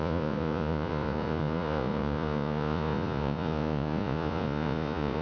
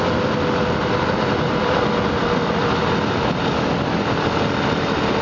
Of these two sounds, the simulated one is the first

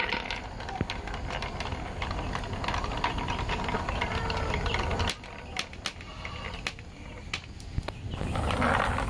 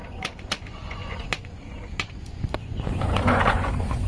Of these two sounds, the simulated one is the second